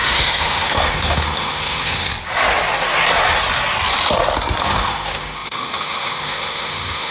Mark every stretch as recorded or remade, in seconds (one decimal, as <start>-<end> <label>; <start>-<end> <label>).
0.0-2.1 remade; 2.1-4.6 recorded; 4.6-7.1 remade

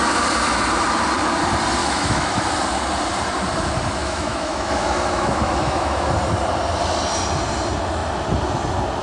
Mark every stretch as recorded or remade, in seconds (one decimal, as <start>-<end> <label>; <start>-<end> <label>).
0.0-1.8 recorded; 1.8-2.4 remade; 2.4-4.0 recorded; 4.0-6.1 remade; 6.1-9.0 recorded

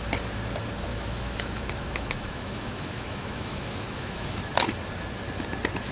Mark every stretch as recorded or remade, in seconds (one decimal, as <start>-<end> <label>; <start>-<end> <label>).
0.0-0.9 recorded; 0.9-4.4 remade; 4.4-5.9 recorded

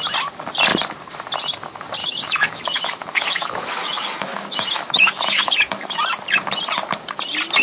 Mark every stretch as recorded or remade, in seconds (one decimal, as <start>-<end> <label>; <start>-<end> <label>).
0.0-2.0 recorded; 2.0-6.0 remade; 6.0-7.6 recorded

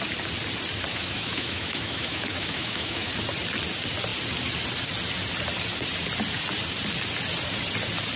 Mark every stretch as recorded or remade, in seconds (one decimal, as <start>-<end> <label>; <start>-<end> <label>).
0.0-0.9 recorded; 0.9-3.1 remade; 3.1-8.2 recorded